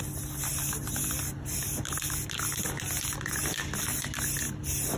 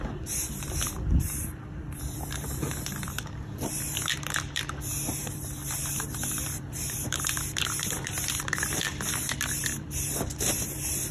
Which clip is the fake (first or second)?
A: second